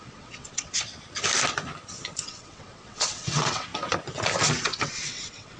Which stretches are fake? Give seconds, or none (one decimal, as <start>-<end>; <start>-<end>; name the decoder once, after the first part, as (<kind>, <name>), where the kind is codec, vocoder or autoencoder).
0.0-0.9 (vocoder, WaveNeXt); 2.2-3.7; 4.6-5.6

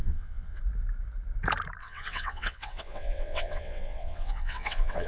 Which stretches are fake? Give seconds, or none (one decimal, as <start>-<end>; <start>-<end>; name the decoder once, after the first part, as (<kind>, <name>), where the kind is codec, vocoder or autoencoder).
0.0-0.6 (vocoder, WaveNeXt); 1.8-5.1

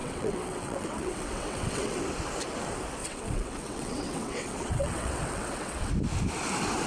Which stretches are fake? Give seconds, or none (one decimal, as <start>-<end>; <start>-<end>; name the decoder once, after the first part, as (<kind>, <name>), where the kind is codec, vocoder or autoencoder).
0.0-2.0 (vocoder, WaveNeXt); 3.0-5.9